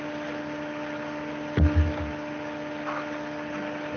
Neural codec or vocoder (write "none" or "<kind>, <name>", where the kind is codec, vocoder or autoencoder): none